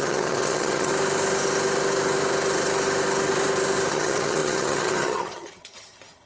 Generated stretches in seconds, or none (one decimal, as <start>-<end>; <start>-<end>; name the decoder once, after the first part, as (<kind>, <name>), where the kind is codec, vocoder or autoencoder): 0.0-0.9 (vocoder, HiFi-GAN); 3.9-6.3